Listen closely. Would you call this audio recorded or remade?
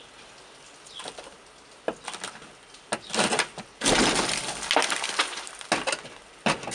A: recorded